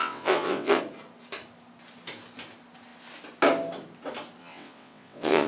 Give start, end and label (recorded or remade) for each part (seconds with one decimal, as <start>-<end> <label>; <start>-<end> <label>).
0.0-0.8 remade; 0.8-4.4 recorded; 4.4-5.5 remade